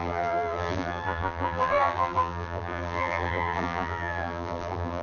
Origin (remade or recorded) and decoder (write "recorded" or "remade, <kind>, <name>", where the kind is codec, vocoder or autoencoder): remade, vocoder, BigVGAN v2